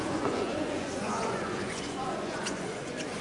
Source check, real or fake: fake